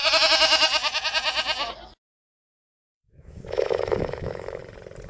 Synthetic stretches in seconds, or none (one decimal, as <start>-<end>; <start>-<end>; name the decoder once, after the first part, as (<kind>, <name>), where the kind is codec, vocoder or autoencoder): 2.6-4.6 (autoencoder, DAC-VAE)